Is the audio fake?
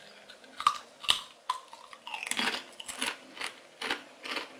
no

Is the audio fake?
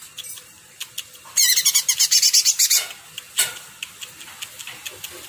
no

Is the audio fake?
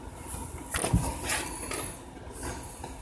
no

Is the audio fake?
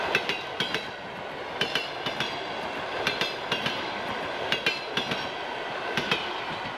no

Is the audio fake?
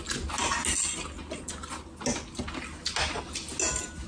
no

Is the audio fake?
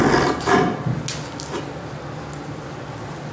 no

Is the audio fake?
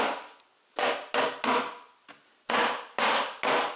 no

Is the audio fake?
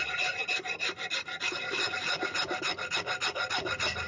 no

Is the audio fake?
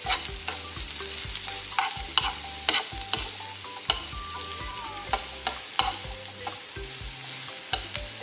no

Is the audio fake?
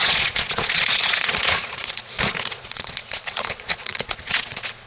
yes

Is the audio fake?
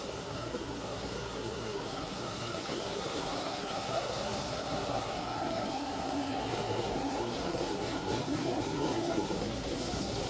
yes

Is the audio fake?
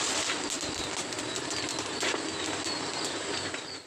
no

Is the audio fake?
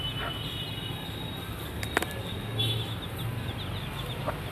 no